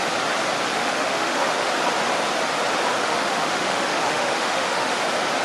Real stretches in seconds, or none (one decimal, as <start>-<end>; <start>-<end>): 0.0-0.7; 1.7-3.0; 5.0-5.4